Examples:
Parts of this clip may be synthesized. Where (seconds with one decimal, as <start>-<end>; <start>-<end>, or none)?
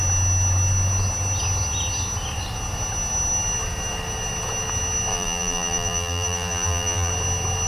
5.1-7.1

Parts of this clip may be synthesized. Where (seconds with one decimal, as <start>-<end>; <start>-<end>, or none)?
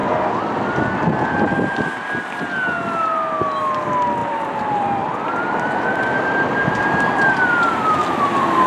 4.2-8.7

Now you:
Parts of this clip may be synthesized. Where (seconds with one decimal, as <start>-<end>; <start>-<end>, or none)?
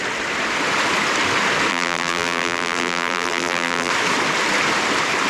1.7-3.9